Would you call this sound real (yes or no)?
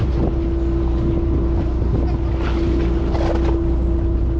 yes